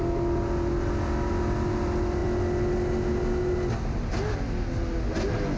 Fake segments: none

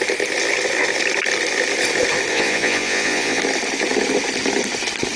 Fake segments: 2.3-3.4 (vocoder, Vocos)

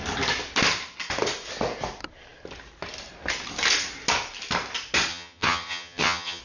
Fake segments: 5.1-6.4 (vocoder, HiFi-GAN)

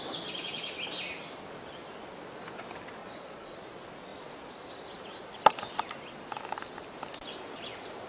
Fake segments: 3.0-3.5 (vocoder, Vocos)

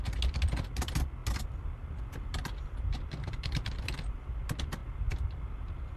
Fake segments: none

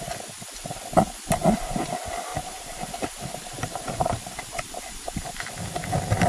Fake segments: 1.4-1.9 (vocoder, BigVGAN v2); 2.3-5.3